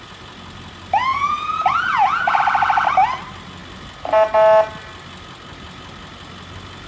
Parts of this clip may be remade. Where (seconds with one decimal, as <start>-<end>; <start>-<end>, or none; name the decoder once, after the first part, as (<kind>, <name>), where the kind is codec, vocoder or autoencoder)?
1.1-2.4 (vocoder, Vocos)